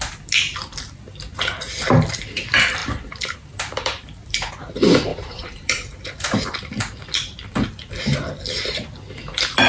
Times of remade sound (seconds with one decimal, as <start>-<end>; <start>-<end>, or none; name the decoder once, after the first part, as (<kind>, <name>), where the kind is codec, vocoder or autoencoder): 2.8-4.5 (vocoder, BigVGAN v2); 5.1-6.9